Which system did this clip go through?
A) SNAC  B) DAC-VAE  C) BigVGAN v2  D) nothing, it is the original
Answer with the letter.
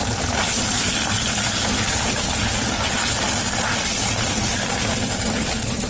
D